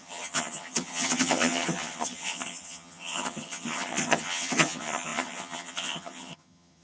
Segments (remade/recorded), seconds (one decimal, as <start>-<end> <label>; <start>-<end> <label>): 0.0-6.8 remade